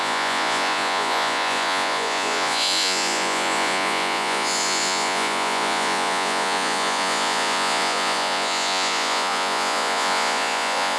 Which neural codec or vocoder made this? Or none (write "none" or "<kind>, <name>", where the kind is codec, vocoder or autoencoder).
vocoder, Vocos